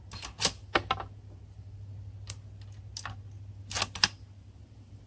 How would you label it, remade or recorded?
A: recorded